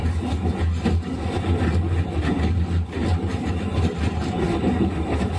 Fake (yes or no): no